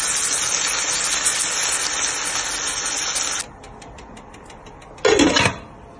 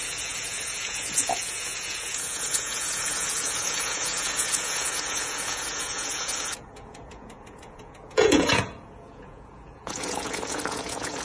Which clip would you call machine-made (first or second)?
second